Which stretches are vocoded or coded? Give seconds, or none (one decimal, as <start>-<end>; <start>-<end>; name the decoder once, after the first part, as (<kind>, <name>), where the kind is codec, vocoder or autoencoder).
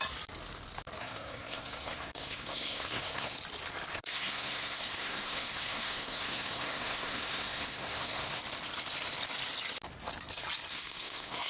1.0-3.4 (codec, SNAC); 3.9-8.4; 10.7-11.5